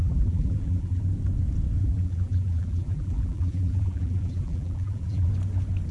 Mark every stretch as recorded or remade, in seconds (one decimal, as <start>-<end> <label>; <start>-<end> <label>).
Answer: 0.0-1.0 remade; 1.0-1.8 recorded; 1.8-5.3 remade; 5.3-5.9 recorded